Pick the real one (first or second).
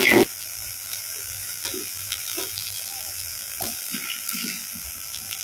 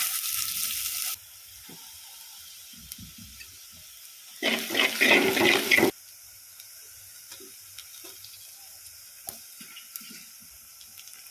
second